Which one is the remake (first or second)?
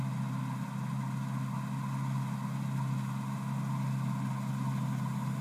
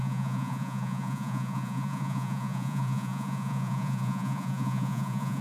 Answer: second